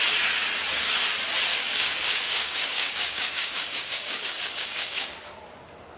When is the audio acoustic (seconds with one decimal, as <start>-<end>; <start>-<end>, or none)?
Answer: 0.0-1.5; 5.1-6.0